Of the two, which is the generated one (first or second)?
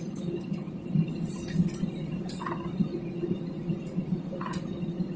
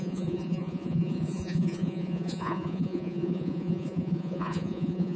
second